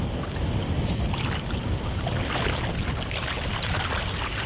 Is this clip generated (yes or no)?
no